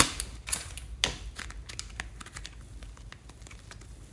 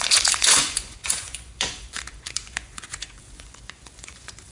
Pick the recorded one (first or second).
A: first